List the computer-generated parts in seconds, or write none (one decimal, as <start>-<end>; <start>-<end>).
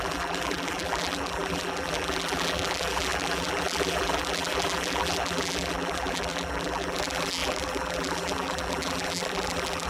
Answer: 0.0-9.9